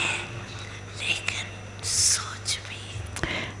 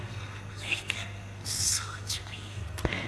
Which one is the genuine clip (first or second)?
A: first